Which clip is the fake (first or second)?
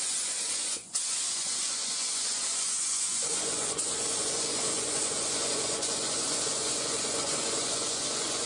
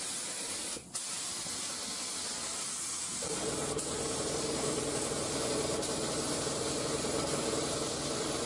first